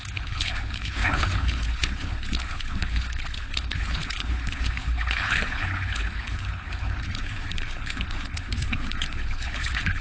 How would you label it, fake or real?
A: fake